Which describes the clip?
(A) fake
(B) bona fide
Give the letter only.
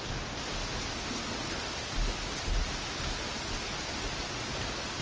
B